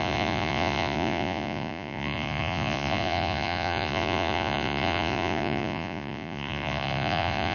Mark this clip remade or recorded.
remade